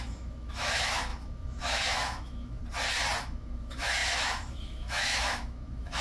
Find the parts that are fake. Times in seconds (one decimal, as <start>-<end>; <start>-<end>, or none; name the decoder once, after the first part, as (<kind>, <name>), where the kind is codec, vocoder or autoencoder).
0.0-2.6 (autoencoder, DAC-VAE); 3.2-6.0